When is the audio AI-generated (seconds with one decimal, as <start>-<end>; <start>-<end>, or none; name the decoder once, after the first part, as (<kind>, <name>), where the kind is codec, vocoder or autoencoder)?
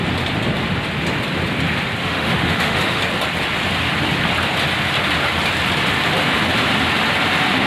2.0-3.0 (autoencoder, DAC-VAE)